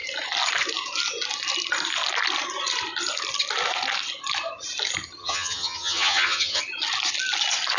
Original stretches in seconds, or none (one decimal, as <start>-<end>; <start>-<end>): 0.0-5.2; 6.6-7.8